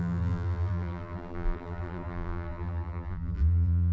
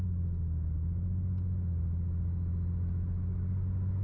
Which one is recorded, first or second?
second